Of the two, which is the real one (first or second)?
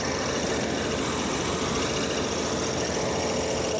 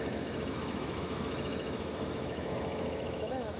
first